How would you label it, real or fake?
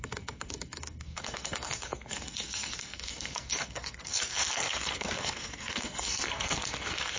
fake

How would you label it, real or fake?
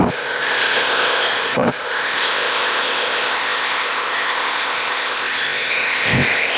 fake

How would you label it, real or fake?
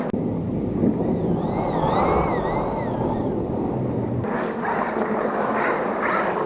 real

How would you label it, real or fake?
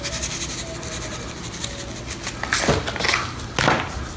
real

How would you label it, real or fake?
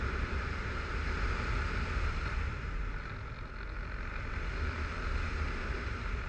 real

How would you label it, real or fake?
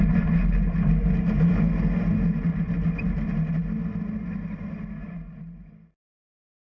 real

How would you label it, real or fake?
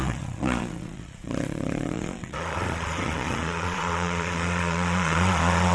fake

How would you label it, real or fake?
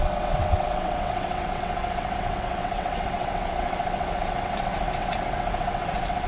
fake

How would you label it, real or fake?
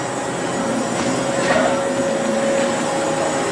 real